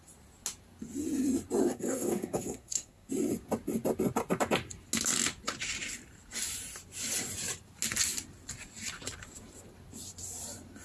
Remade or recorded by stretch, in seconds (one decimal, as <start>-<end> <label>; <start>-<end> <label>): 0.0-1.6 recorded; 1.6-3.1 remade; 3.1-10.8 recorded